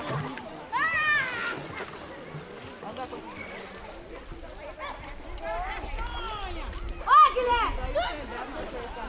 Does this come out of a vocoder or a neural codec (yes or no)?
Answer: no